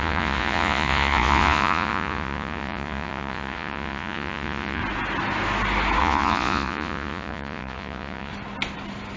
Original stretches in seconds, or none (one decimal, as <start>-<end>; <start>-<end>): 4.8-6.0; 8.3-9.2